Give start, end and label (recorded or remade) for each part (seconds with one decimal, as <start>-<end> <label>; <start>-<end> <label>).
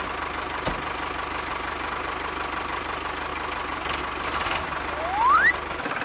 0.0-6.0 recorded